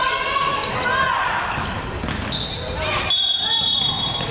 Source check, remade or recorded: recorded